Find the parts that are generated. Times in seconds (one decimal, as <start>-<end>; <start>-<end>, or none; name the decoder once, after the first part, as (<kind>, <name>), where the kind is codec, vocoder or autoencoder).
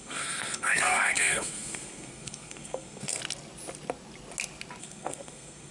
0.0-3.2 (codec, SNAC); 4.8-5.7